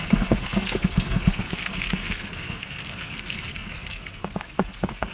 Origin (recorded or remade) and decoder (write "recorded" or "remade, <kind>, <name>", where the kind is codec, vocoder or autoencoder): remade, codec, SNAC